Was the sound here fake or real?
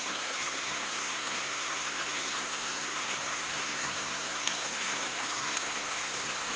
fake